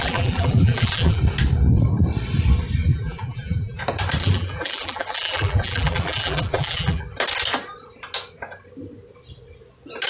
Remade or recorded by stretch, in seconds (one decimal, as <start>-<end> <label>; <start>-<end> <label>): 0.0-1.2 remade; 1.2-2.9 recorded; 2.9-3.8 remade; 3.8-4.2 recorded; 4.2-7.0 remade; 7.0-10.1 recorded